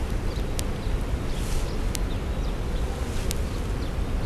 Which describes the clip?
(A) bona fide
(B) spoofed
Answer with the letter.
A